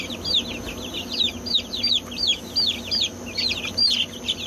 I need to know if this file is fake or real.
real